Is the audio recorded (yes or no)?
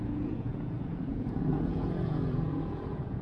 no